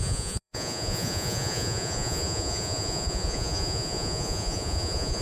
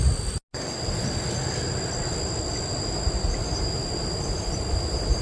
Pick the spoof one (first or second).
first